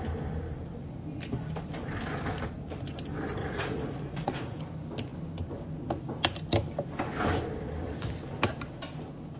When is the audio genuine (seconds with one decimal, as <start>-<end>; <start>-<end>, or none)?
0.0-3.4; 4.6-9.4

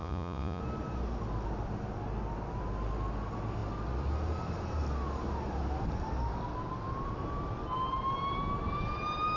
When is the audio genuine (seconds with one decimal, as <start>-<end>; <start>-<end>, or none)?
0.6-9.4

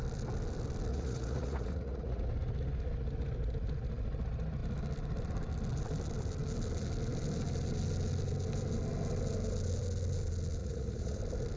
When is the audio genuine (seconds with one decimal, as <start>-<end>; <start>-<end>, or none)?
0.0-0.9; 2.2-10.6; 11.2-11.6

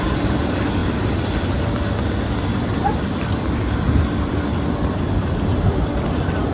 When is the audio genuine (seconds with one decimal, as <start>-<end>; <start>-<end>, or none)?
0.0-6.5

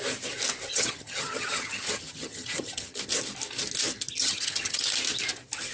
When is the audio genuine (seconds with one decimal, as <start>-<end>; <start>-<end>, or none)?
0.0-0.7; 3.0-4.2; 4.8-5.7

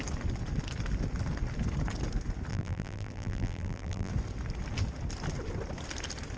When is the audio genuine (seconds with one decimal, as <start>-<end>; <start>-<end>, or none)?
0.0-2.5; 4.1-6.4

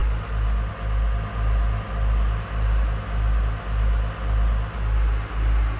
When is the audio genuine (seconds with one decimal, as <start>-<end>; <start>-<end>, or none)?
0.0-5.8

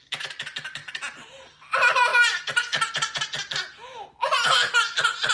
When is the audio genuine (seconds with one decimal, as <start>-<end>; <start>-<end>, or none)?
0.0-5.3